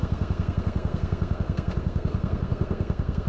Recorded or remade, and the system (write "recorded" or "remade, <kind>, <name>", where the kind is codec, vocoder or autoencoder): remade, codec, SNAC